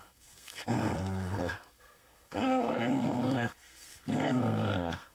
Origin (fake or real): fake